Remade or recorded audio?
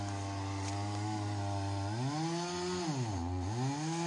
recorded